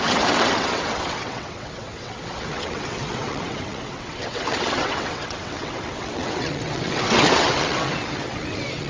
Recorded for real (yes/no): no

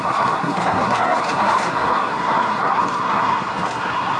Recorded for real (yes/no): no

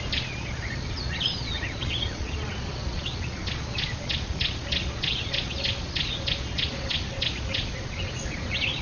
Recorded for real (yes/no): no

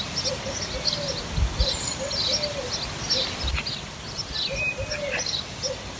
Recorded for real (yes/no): yes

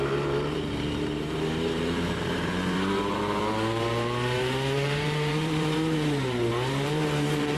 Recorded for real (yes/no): no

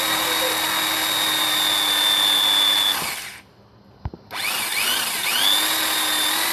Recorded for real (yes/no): yes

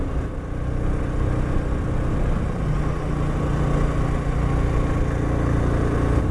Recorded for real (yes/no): yes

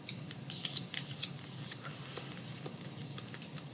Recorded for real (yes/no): yes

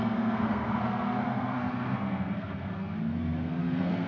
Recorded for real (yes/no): no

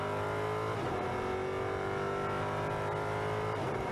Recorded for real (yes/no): yes